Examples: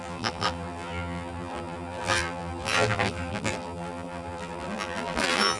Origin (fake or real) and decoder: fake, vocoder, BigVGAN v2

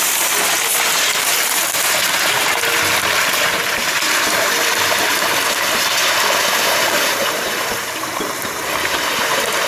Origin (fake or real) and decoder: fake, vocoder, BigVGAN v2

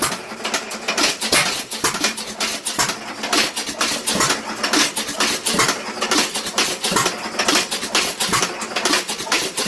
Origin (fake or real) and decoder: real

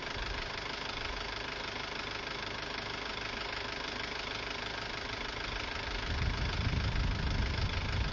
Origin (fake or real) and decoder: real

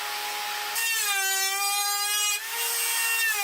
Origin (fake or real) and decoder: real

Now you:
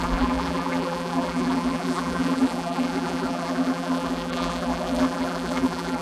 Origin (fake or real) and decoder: fake, vocoder, BigVGAN v2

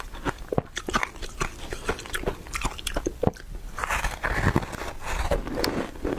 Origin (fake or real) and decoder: real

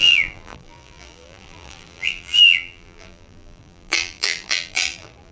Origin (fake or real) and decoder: fake, vocoder, BigVGAN v2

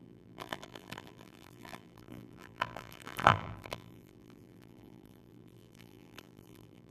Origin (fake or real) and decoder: fake, vocoder, BigVGAN v2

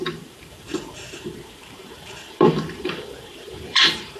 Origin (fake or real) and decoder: fake, vocoder, BigVGAN v2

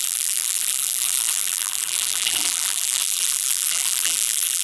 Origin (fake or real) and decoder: fake, vocoder, BigVGAN v2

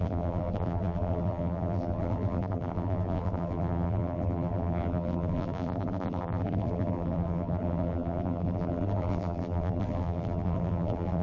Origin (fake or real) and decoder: fake, vocoder, BigVGAN v2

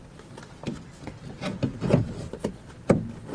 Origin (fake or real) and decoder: real